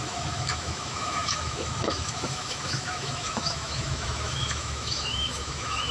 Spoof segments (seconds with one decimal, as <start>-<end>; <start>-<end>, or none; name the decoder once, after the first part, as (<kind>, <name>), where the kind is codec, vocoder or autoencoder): 0.0-5.9 (autoencoder, DAC-VAE)